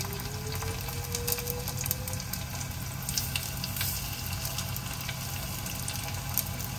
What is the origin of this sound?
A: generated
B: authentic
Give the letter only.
B